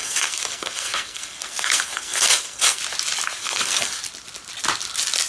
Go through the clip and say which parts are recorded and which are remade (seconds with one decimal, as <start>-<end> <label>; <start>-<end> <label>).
0.0-2.8 remade; 2.8-3.4 recorded; 3.4-4.0 remade; 4.0-5.3 recorded